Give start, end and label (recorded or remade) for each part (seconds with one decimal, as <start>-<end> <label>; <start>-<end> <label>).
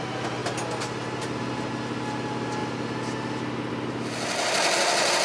0.0-5.2 recorded